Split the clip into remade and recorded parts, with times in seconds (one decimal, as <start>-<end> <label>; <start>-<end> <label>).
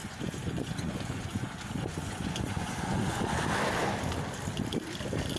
0.0-3.2 remade; 3.2-5.4 recorded